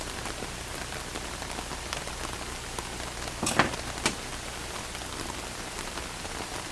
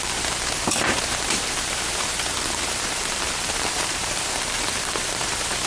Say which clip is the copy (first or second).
second